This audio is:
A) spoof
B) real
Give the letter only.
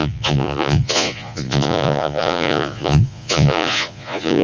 A